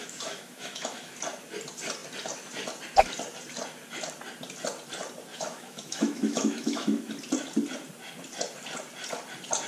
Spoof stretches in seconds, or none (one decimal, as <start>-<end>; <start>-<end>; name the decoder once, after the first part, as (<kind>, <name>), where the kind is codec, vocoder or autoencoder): 0.0-1.1 (autoencoder, DAC-VAE); 5.3-7.1